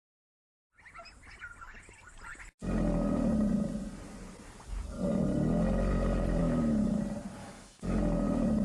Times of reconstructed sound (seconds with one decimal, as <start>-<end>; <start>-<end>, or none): 6.4-7.0; 7.4-8.0